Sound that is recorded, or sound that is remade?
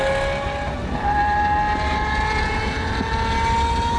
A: recorded